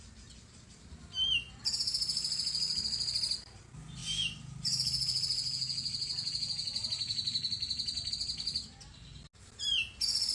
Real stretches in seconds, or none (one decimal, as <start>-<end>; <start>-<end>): 0.0-10.3